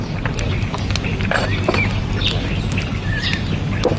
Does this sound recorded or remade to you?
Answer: recorded